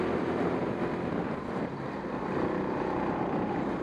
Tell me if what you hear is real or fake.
real